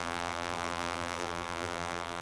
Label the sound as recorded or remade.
remade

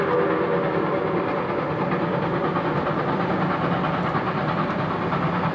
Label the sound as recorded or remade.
recorded